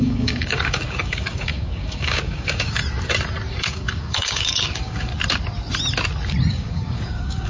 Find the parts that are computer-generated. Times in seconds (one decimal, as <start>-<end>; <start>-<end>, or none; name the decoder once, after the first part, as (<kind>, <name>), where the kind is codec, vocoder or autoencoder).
0.0-2.8 (codec, DAC); 3.5-5.1; 6.5-7.5